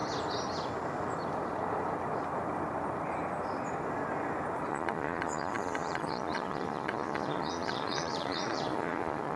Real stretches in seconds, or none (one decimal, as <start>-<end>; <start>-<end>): 0.0-4.7